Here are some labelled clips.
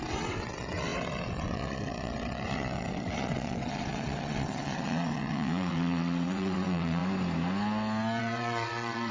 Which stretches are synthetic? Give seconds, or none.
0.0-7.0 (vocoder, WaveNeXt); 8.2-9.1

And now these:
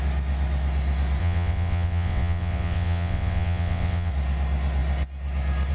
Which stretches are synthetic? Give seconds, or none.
1.2-4.1 (vocoder, WaveNeXt)

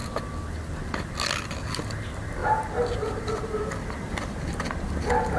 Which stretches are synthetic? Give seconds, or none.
none

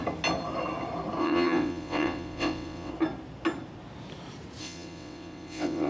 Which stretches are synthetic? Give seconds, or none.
1.2-2.9 (vocoder, WaveNeXt); 4.6-5.9

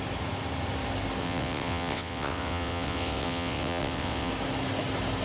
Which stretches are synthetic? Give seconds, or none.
1.2-4.3 (vocoder, WaveNeXt)